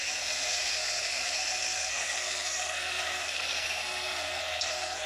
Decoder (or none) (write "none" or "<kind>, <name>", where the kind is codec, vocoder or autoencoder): codec, SNAC